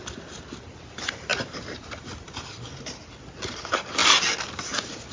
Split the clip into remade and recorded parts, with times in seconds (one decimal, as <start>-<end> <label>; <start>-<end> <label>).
0.0-5.1 recorded

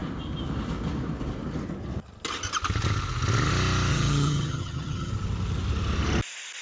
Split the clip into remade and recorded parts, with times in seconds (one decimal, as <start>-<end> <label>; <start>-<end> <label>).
0.0-3.9 recorded; 3.9-5.1 remade; 5.1-6.6 recorded

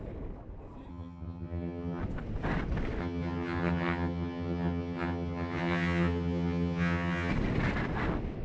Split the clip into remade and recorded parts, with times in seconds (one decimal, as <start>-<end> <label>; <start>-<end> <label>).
0.0-0.9 recorded; 0.9-2.0 remade; 2.0-3.0 recorded; 3.0-7.3 remade; 7.3-8.4 recorded

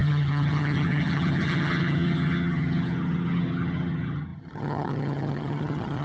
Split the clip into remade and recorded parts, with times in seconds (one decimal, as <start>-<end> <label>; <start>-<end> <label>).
0.0-6.0 remade

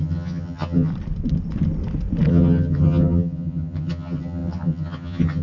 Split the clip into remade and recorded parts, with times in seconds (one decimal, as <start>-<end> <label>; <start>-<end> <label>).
0.0-0.9 remade; 0.9-2.3 recorded; 2.3-5.4 remade